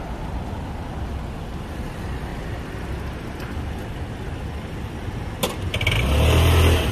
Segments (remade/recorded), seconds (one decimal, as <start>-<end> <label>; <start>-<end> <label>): 0.0-6.9 recorded